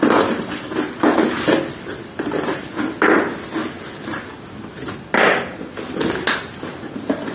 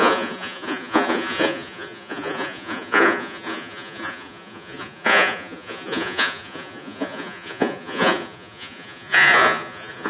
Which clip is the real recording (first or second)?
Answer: first